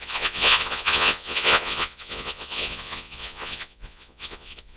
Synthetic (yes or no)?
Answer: yes